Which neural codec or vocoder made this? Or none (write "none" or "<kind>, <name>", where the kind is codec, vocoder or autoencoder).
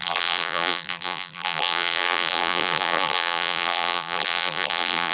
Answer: vocoder, BigVGAN v2